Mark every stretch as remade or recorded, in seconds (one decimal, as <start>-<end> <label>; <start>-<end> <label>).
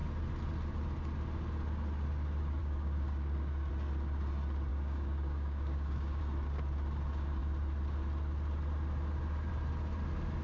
0.0-2.6 recorded; 2.6-3.7 remade; 3.7-4.7 recorded; 4.7-6.2 remade; 6.2-10.4 recorded